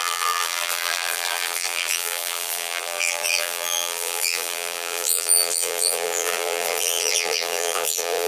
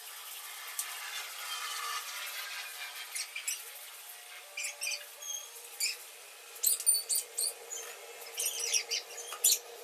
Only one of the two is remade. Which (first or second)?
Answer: first